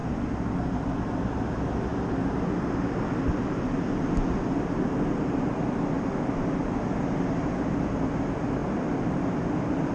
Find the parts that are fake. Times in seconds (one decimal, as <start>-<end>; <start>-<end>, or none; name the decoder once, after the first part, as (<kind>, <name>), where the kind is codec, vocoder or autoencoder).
none